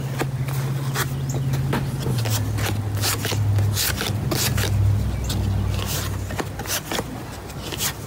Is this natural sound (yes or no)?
yes